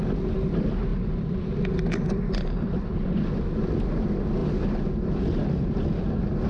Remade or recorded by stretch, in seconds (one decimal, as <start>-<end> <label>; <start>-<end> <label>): 0.0-0.9 recorded; 0.9-1.6 remade; 1.6-6.5 recorded